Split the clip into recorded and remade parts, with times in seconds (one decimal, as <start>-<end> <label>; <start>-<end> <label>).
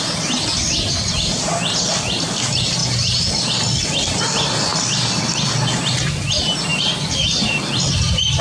0.0-8.4 recorded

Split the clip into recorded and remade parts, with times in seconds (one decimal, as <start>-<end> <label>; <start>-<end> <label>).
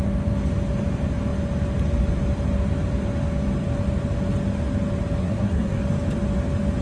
0.0-5.2 recorded; 5.2-5.8 remade; 5.8-6.8 recorded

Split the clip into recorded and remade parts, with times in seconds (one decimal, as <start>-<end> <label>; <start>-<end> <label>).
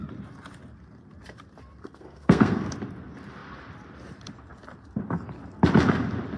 0.0-1.8 recorded; 1.8-2.7 remade; 2.7-6.4 recorded